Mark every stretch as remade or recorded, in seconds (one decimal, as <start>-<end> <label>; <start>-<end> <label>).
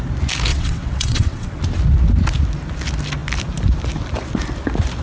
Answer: 0.0-0.5 recorded; 0.5-1.6 remade; 1.6-5.0 recorded